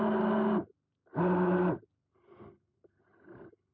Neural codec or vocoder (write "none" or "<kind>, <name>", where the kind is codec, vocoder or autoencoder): none